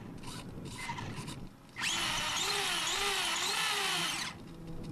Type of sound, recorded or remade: recorded